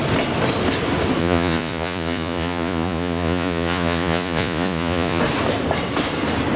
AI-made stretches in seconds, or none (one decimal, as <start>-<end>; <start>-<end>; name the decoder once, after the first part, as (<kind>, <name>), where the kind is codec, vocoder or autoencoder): 1.2-5.2 (vocoder, Vocos)